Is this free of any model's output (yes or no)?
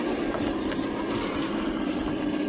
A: no